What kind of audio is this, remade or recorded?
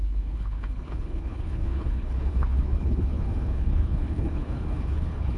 remade